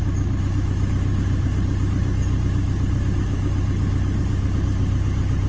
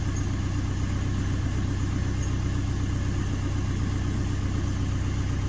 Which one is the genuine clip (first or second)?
second